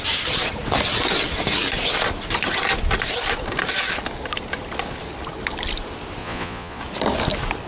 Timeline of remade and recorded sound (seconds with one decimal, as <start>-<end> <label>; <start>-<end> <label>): 0.0-6.2 recorded; 6.2-6.8 remade; 6.8-7.7 recorded